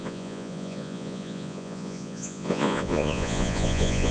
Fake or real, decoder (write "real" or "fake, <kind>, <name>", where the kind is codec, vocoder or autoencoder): fake, vocoder, Vocos